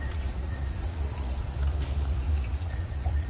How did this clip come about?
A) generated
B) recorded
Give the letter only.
A